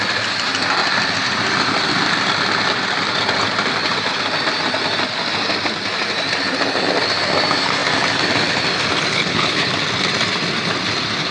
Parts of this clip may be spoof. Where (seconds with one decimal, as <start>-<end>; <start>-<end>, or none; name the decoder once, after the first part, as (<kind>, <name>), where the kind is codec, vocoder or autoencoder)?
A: 9.1-9.7 (codec, HILCodec)

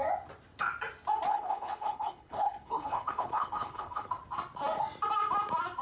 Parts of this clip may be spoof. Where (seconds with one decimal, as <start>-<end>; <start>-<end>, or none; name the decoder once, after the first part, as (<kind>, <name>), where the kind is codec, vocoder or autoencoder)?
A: 1.3-4.1 (codec, HILCodec)

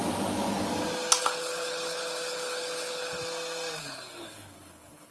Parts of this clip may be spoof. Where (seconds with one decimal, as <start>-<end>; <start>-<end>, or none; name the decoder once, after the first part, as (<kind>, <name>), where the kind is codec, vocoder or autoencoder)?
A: 1.2-3.2 (codec, HILCodec); 3.8-5.1

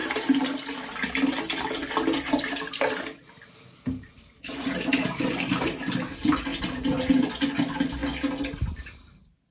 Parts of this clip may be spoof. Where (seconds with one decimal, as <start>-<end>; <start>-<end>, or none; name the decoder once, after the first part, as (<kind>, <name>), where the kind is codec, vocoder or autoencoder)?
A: none

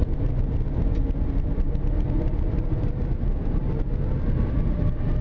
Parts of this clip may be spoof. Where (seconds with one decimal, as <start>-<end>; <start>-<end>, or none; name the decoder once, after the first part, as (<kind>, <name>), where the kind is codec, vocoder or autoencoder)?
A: none